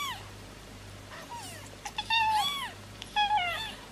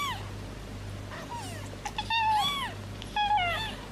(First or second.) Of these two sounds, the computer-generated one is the first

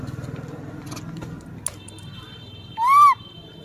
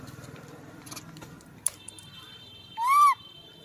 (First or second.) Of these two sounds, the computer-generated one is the second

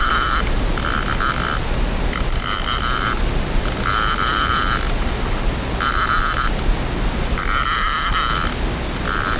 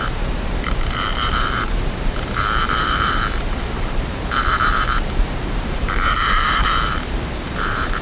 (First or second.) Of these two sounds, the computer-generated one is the second